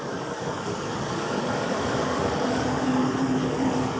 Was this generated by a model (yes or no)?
yes